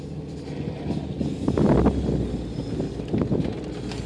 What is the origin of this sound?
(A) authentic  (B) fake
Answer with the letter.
A